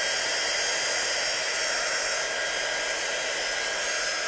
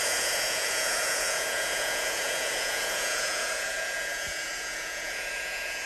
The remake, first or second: second